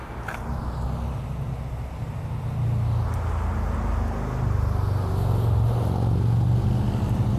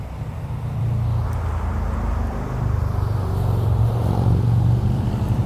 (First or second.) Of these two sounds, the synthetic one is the second